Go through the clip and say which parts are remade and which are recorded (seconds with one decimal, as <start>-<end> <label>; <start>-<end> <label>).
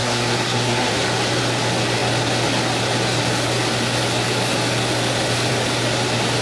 0.0-0.9 remade; 0.9-6.4 recorded